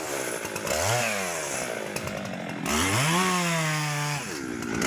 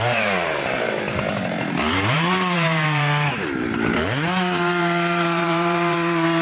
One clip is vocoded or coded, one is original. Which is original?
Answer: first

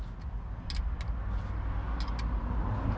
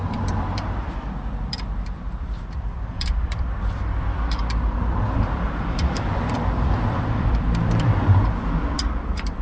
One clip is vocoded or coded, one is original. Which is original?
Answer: first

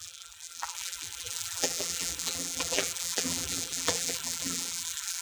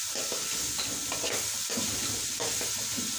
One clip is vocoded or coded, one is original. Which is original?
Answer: second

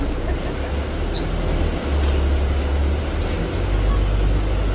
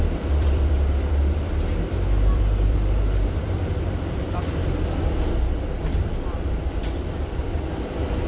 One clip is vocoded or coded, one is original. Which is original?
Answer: first